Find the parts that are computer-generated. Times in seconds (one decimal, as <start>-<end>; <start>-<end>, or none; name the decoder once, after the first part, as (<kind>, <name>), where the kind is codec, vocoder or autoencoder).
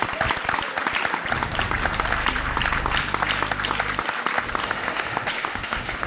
4.6-6.1 (autoencoder, DAC-VAE)